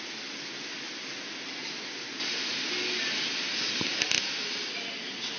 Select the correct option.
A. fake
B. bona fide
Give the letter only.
B